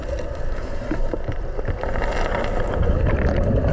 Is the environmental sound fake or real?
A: real